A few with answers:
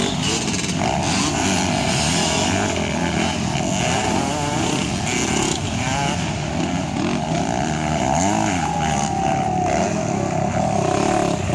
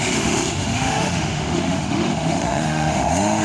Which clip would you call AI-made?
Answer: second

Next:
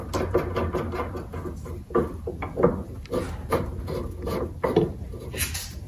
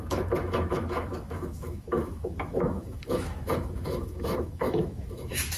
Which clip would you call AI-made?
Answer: second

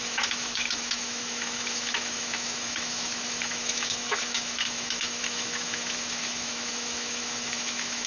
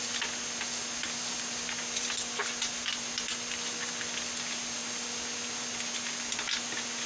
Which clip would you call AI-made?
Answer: first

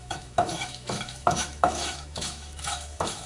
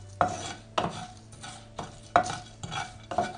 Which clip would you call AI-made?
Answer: first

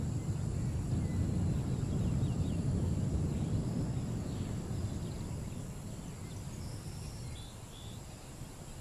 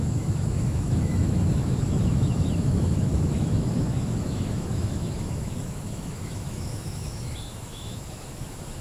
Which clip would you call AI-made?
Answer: second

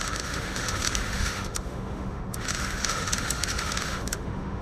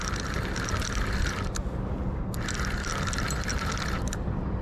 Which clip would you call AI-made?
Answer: first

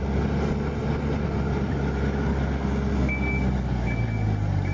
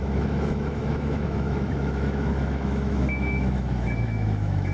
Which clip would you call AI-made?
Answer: second